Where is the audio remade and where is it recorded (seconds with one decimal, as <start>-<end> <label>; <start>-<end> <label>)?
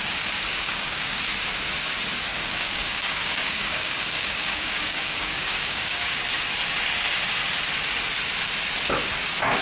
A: 0.0-0.5 recorded; 0.5-1.2 remade; 1.2-2.3 recorded; 2.3-6.2 remade; 6.2-9.6 recorded